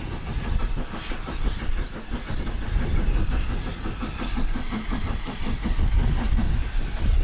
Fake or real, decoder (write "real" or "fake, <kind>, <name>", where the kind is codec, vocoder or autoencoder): real